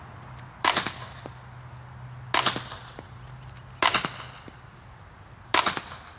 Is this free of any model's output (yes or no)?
yes